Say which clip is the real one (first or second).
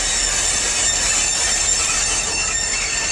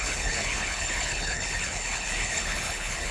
first